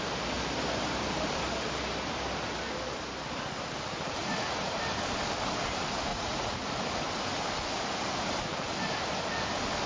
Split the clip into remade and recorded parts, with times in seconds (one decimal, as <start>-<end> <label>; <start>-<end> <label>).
0.0-4.2 recorded; 4.2-4.8 remade; 4.8-6.1 recorded; 6.1-6.8 remade; 6.8-9.9 recorded